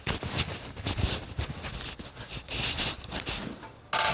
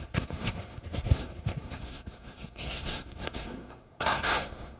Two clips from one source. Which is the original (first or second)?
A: first